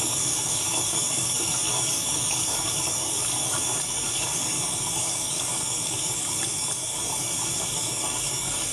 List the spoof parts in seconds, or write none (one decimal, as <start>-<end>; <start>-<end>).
0.0-8.7